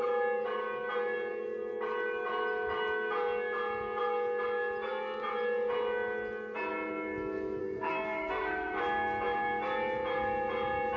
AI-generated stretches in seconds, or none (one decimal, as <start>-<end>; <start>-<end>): 7.6-8.8